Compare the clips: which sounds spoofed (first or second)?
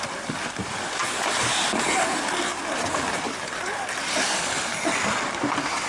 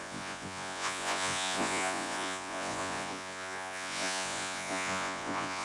second